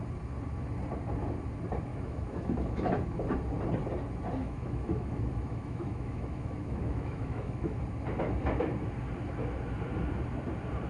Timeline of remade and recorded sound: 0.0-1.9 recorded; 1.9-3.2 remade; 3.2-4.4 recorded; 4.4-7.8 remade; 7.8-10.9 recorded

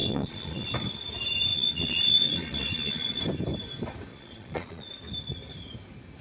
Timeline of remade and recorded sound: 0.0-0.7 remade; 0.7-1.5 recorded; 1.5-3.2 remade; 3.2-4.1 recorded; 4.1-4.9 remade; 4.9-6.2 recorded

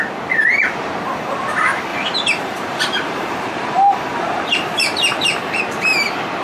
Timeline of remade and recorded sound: 0.0-1.9 recorded; 1.9-5.6 remade; 5.6-6.4 recorded

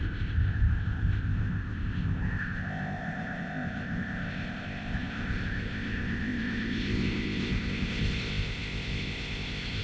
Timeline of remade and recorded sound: 0.0-9.8 remade

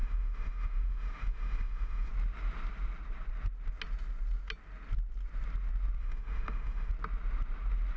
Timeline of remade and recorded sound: 0.0-2.1 remade; 2.1-6.0 recorded; 6.0-6.9 remade; 6.9-8.0 recorded